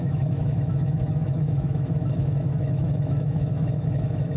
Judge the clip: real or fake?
fake